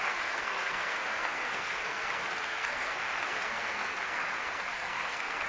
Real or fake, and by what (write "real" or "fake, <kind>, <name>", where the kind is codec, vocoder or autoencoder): fake, codec, SNAC